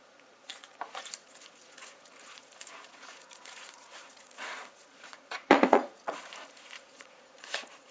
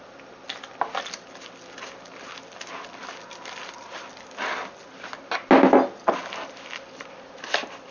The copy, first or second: first